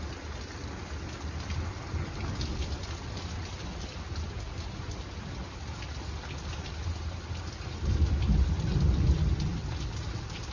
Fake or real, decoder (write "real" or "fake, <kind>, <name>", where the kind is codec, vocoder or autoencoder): real